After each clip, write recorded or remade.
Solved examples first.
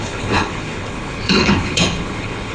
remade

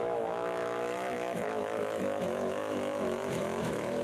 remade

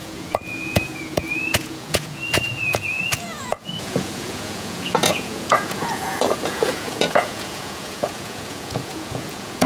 remade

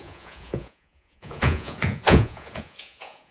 remade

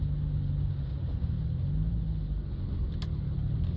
recorded